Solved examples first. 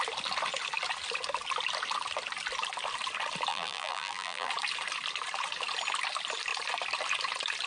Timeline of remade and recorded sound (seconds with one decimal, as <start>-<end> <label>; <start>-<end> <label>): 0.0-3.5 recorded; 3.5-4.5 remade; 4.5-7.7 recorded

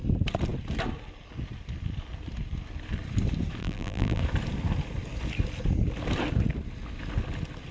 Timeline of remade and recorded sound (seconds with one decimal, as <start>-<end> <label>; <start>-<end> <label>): 0.0-3.6 recorded; 3.6-4.2 remade; 4.2-7.7 recorded

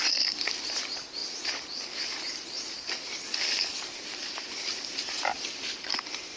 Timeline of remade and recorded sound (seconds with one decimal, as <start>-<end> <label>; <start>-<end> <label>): 0.0-1.2 recorded; 1.2-5.0 remade; 5.0-6.4 recorded